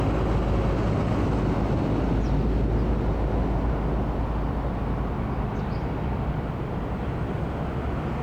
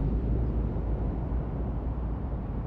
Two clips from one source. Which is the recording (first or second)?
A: first